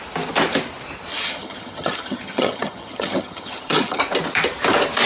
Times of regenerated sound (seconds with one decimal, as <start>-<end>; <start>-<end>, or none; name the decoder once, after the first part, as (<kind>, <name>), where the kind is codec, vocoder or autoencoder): 1.1-4.0 (vocoder, HiFi-GAN)